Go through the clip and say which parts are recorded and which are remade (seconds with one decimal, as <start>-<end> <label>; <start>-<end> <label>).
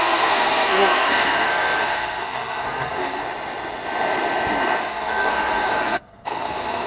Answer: 0.0-3.2 remade; 3.2-4.8 recorded; 4.8-6.9 remade